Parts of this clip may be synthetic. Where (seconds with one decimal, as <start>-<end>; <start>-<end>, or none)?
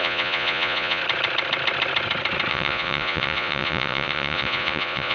0.0-1.0; 2.5-5.1